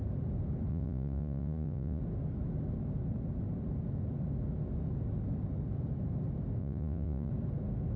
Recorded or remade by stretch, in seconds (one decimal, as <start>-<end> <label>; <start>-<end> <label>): 0.0-0.7 recorded; 0.7-2.0 remade; 2.0-6.6 recorded; 6.6-7.3 remade; 7.3-8.0 recorded

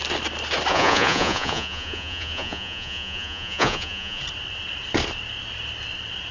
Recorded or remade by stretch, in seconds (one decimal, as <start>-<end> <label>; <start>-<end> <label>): 0.0-0.7 recorded; 0.7-4.2 remade; 4.2-6.3 recorded

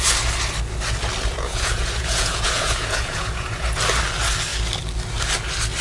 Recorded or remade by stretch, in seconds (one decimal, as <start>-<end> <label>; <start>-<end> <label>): 0.0-1.3 recorded; 1.3-3.8 remade; 3.8-5.8 recorded

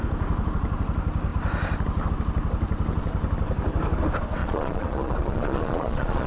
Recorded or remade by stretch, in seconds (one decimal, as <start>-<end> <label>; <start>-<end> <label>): 0.0-4.4 recorded; 4.4-6.3 remade

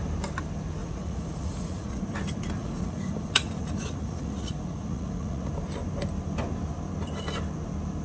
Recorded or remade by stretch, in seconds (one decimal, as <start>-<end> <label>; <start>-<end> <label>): 0.0-0.8 recorded; 0.8-2.0 remade; 2.0-2.6 recorded; 2.6-5.5 remade; 5.5-8.0 recorded

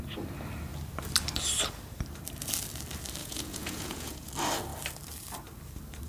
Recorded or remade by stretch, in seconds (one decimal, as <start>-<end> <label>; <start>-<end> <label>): 0.0-3.2 recorded; 3.2-4.3 remade; 4.3-6.1 recorded

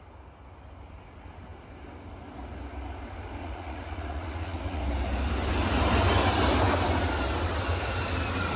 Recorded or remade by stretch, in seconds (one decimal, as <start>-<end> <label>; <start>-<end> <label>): 0.0-3.4 recorded; 3.4-4.8 remade; 4.8-8.6 recorded

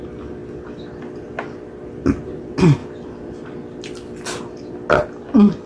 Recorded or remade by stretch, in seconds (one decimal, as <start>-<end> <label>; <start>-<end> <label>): 0.0-5.7 recorded